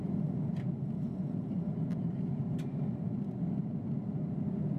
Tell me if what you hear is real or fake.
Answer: real